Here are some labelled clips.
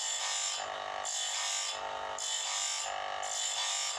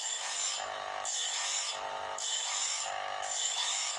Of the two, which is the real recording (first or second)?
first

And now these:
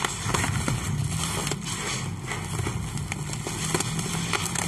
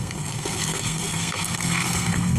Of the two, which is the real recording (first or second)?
first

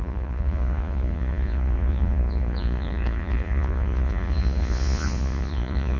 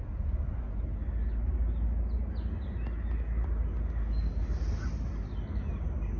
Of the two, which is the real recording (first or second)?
second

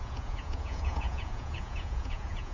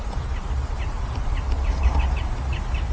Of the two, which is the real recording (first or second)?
second